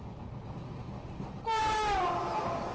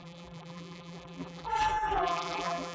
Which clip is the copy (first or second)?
second